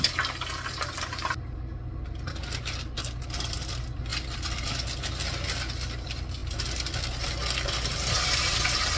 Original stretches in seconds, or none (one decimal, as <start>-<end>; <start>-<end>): 0.0-9.0